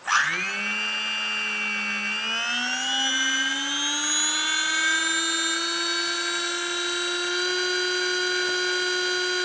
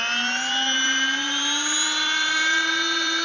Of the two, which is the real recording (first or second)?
first